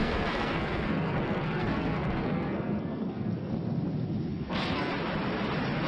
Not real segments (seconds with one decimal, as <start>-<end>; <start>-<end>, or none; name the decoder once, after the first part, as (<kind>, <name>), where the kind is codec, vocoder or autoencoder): 0.0-3.5 (codec, SNAC); 4.3-4.9